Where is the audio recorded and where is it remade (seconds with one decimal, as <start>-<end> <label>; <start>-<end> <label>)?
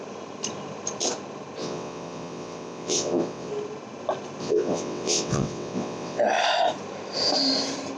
0.0-1.6 recorded; 1.6-3.5 remade; 3.5-4.4 recorded; 4.4-6.2 remade; 6.2-8.0 recorded